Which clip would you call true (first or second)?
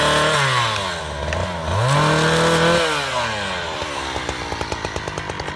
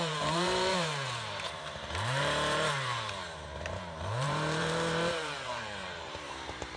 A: first